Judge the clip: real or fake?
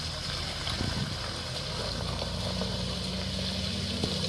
real